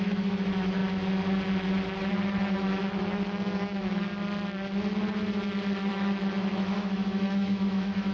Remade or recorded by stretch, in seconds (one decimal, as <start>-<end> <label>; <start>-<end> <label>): 0.0-0.8 remade; 0.8-2.1 recorded; 2.1-4.1 remade; 4.1-5.9 recorded; 5.9-8.1 remade